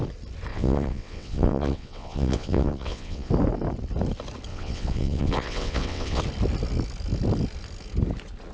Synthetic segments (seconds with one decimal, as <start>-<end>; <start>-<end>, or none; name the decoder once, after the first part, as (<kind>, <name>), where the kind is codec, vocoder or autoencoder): 0.5-3.3 (vocoder, WaveNeXt); 4.5-6.2